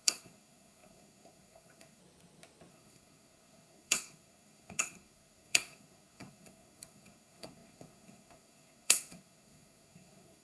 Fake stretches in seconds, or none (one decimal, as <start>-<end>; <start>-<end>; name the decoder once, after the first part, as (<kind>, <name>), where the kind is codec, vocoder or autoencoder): 0.0-2.0 (codec, SNAC); 2.7-10.4